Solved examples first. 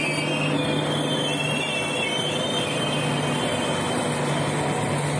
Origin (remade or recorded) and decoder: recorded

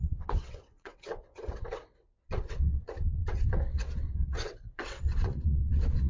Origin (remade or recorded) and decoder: remade, vocoder, WaveNeXt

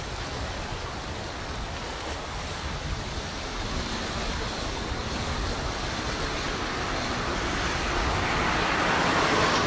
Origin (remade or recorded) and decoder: recorded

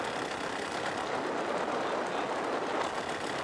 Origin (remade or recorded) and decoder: recorded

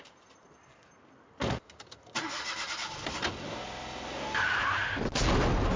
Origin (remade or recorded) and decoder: recorded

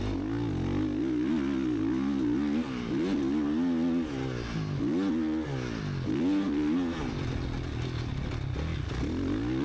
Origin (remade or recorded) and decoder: recorded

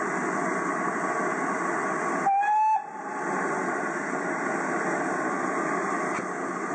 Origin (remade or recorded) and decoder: recorded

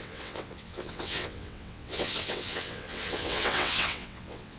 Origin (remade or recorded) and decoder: remade, vocoder, WaveNeXt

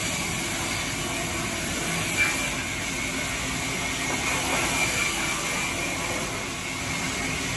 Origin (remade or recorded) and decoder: recorded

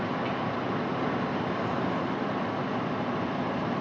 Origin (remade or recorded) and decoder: recorded